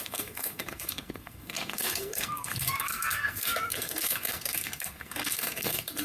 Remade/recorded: remade